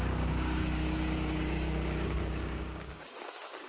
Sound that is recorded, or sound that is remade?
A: remade